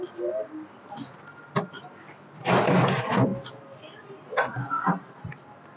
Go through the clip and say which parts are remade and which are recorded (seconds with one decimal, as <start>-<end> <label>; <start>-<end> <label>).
0.0-5.8 recorded